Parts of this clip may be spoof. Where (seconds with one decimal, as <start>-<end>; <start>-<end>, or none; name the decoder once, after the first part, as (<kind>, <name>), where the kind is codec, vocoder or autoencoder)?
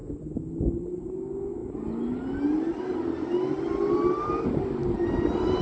none